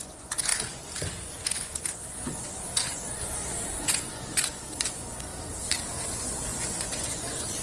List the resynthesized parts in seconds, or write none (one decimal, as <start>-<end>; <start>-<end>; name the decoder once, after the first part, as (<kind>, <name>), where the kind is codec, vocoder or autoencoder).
0.0-5.3 (vocoder, Vocos); 6.0-7.6